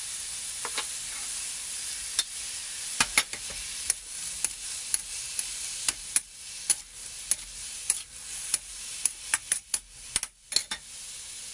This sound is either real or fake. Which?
real